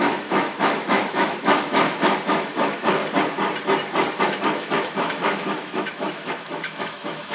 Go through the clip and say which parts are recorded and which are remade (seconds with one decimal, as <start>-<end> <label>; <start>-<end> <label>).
0.0-3.0 remade; 3.0-4.2 recorded; 4.2-7.3 remade